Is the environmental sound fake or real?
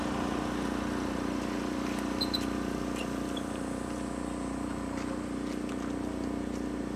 real